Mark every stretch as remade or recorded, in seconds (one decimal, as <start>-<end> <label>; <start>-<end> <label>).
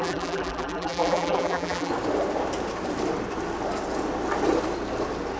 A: 0.0-1.9 remade; 1.9-5.4 recorded